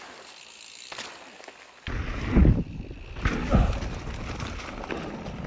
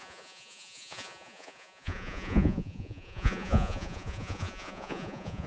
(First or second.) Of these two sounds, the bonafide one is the first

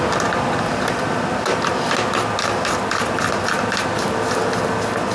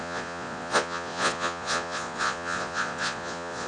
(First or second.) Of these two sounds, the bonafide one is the first